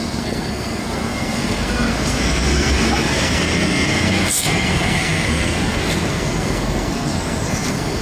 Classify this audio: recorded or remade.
remade